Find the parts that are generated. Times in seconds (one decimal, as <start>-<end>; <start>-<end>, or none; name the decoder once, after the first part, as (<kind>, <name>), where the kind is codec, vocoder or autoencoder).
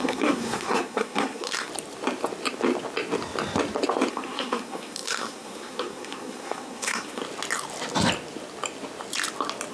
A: 0.0-1.7 (codec, SNAC); 4.1-7.2